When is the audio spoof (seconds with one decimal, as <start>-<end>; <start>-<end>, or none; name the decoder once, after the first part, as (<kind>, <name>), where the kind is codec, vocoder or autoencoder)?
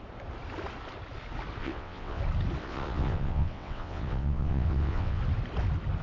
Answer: 1.6-2.2 (vocoder, WaveNeXt); 2.6-5.2